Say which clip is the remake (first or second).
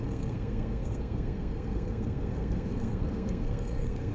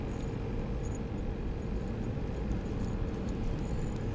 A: first